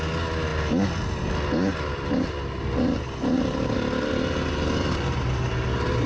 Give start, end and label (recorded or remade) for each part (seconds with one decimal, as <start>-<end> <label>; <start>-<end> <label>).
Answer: 0.0-6.1 recorded